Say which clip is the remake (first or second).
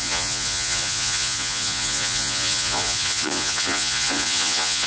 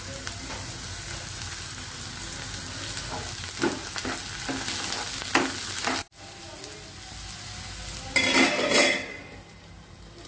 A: first